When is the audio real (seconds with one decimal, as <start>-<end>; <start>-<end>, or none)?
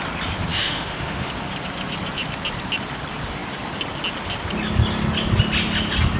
0.0-0.5; 1.3-6.2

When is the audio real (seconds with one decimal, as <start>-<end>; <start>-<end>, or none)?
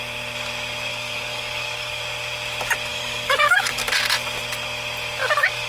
0.0-0.9; 2.0-2.9; 3.8-5.2